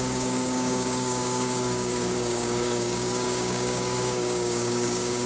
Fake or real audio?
fake